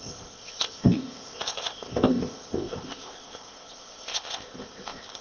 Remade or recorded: remade